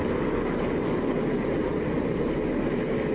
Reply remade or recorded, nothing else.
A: recorded